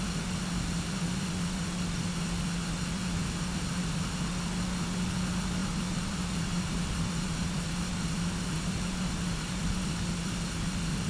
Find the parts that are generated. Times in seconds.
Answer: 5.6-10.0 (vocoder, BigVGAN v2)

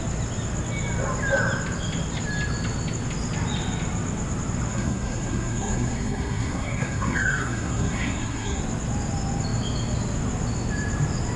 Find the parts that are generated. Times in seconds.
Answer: 4.7-8.6 (codec, SNAC)

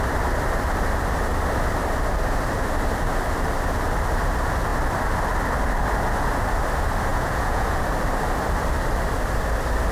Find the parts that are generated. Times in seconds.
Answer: 7.1-7.8 (vocoder, Vocos)

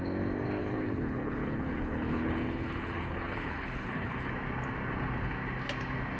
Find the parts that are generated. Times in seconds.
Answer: 0.6-4.3 (codec, HILCodec)

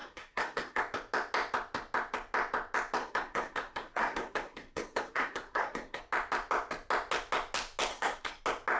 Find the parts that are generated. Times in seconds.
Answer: 0.0-0.8 (codec, SNAC); 3.0-6.0; 7.9-8.4